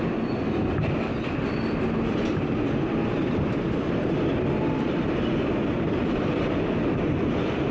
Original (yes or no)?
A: no